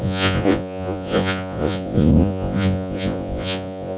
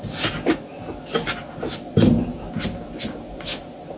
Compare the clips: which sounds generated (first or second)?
first